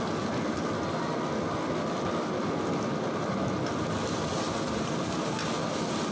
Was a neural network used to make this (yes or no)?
no